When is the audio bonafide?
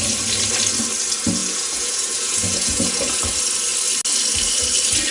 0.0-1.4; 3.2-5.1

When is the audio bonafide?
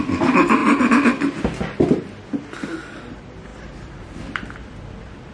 0.0-5.3